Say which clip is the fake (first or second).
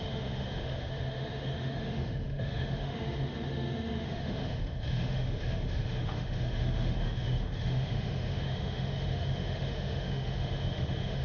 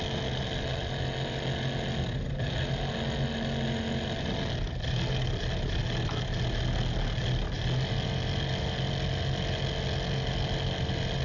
first